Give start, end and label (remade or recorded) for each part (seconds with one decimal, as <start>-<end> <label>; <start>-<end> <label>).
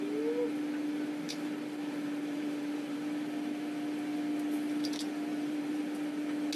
0.0-1.8 recorded; 1.8-3.0 remade; 3.0-5.3 recorded; 5.3-5.8 remade; 5.8-6.6 recorded